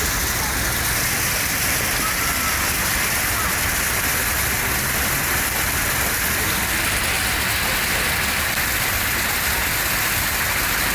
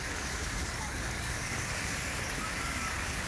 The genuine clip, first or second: first